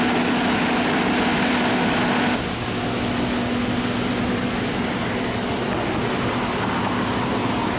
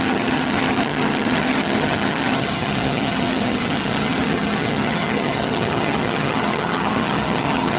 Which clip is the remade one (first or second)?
second